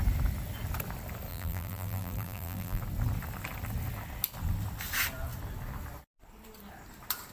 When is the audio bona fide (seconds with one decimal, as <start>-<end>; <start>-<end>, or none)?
0.0-1.3; 2.8-7.3